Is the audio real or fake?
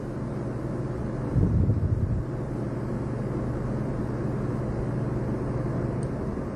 real